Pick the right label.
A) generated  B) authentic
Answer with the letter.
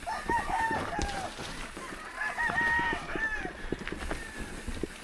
B